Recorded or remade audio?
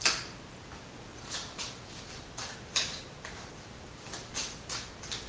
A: recorded